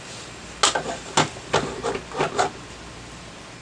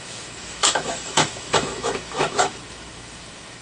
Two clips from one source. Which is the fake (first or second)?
second